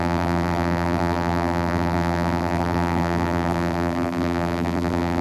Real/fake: fake